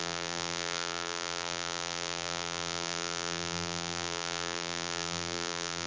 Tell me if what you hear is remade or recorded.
remade